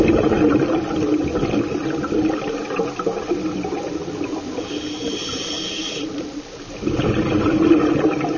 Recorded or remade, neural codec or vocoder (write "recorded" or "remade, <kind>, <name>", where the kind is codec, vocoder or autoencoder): recorded